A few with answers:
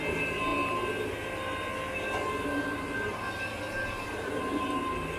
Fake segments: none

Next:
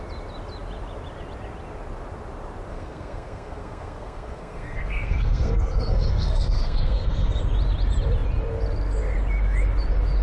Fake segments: 2.7-7.4